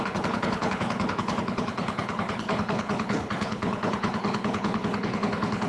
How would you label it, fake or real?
fake